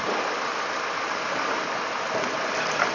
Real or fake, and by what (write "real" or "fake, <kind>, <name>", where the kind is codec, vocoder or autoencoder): real